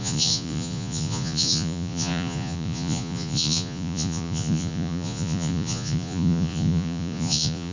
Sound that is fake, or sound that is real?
fake